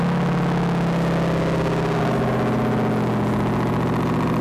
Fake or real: real